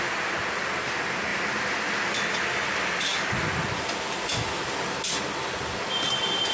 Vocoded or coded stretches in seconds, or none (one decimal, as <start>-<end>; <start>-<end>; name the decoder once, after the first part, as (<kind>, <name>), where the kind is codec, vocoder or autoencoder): none